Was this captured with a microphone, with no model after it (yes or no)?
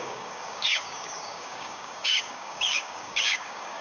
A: no